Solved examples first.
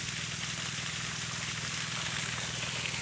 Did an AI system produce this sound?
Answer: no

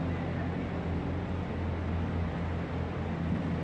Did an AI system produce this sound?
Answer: no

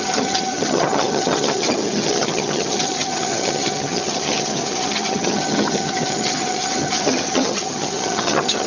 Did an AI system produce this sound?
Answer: yes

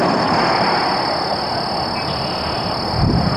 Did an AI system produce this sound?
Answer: no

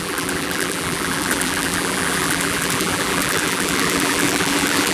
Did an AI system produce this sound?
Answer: yes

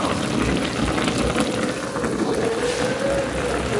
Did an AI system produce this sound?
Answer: no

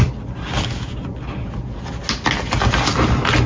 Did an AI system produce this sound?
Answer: no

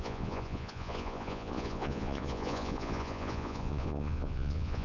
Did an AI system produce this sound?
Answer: yes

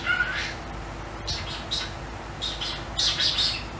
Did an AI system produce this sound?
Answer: no